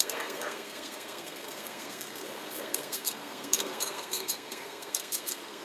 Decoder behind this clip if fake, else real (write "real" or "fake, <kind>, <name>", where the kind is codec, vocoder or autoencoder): fake, codec, SNAC